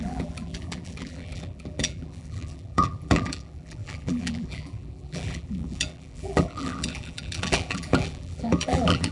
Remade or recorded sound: remade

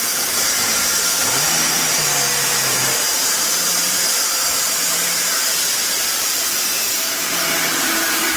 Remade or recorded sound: remade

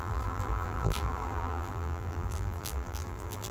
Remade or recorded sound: remade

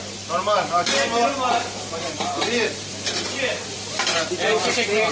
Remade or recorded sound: remade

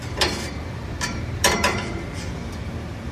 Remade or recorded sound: remade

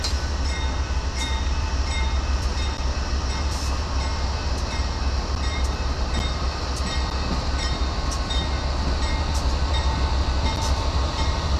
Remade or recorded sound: remade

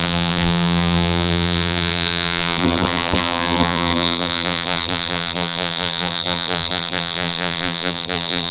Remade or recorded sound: remade